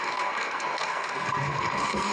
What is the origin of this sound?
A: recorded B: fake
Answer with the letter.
B